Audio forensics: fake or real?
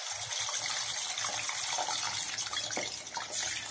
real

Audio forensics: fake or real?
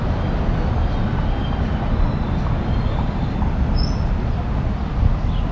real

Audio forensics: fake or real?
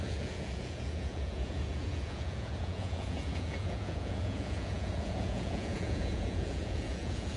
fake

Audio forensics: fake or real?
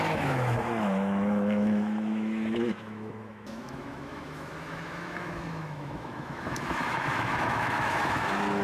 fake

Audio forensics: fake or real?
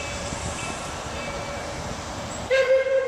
fake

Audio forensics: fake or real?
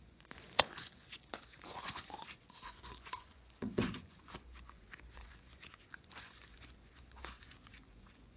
fake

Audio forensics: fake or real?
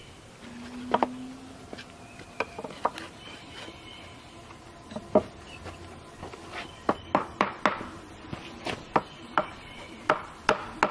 real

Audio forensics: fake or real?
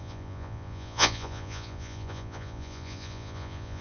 fake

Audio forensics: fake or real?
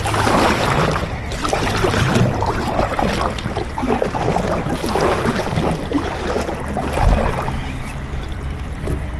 real